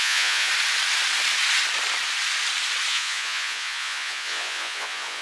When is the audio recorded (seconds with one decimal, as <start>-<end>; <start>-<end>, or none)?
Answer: 0.5-2.9